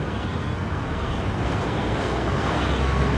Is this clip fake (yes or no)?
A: yes